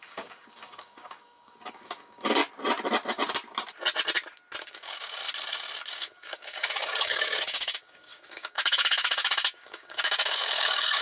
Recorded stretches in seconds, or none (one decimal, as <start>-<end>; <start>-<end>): 2.4-4.6; 5.2-5.9